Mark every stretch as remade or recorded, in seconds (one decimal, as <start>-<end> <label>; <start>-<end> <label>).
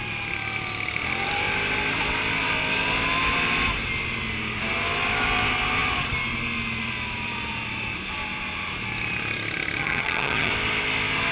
0.0-9.8 recorded; 9.8-10.5 remade; 10.5-11.3 recorded